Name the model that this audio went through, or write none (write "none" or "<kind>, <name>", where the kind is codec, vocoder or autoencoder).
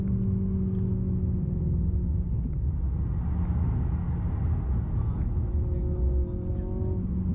none